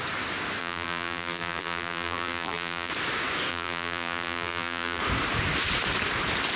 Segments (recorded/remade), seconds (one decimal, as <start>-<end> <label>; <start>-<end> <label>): 0.0-0.6 recorded; 0.6-2.9 remade; 2.9-3.5 recorded; 3.5-5.0 remade; 5.0-6.6 recorded